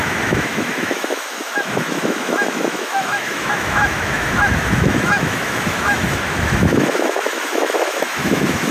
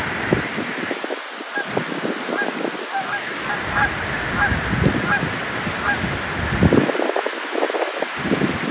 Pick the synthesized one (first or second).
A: first